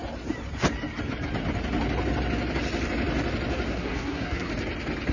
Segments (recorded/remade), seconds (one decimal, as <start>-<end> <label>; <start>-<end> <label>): 0.0-3.7 recorded; 3.7-4.5 remade; 4.5-5.1 recorded